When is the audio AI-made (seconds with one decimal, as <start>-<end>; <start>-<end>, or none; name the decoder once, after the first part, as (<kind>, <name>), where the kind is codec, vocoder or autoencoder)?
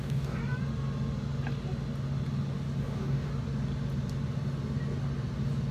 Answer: 0.0-0.4 (codec, DAC); 2.8-3.3